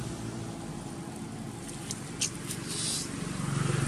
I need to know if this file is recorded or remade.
recorded